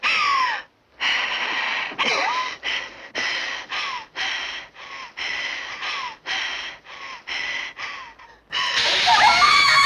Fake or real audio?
real